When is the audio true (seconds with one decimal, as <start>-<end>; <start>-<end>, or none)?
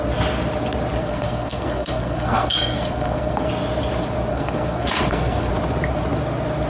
0.0-1.0; 3.5-4.3; 5.5-6.7